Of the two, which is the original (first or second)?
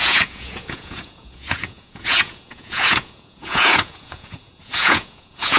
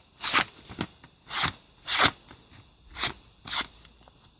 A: second